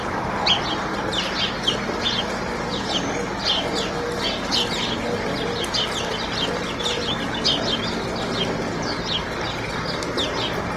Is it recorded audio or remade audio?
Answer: recorded